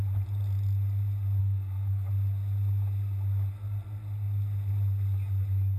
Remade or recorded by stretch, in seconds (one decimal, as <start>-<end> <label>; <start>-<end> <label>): 0.0-1.4 recorded; 1.4-2.1 remade; 2.1-5.8 recorded